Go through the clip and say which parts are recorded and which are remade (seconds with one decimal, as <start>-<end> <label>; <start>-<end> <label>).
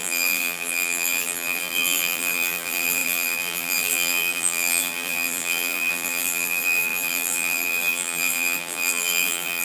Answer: 0.0-9.6 remade